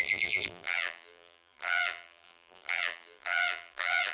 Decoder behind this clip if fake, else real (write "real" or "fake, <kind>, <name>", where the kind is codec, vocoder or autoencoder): fake, vocoder, BigVGAN v2